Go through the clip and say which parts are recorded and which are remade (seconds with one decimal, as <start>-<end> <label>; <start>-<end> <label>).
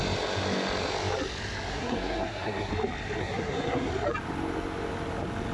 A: 0.0-1.7 recorded; 1.7-2.7 remade; 2.7-3.2 recorded; 3.2-3.9 remade; 3.9-5.5 recorded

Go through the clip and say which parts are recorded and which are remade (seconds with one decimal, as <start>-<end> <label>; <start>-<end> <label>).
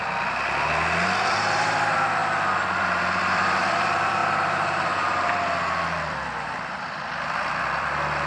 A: 0.0-2.2 remade; 2.2-2.8 recorded; 2.8-8.3 remade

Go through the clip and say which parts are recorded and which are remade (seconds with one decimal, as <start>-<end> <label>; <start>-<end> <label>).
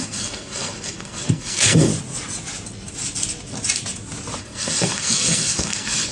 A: 0.0-1.9 remade; 1.9-4.4 recorded; 4.4-6.1 remade